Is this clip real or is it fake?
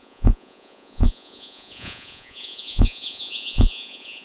fake